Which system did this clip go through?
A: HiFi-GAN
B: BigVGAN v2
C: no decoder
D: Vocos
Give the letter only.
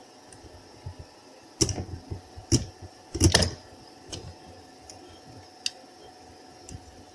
C